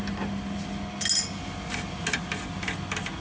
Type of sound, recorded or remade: recorded